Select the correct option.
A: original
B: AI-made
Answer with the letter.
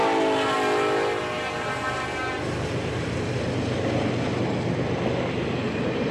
A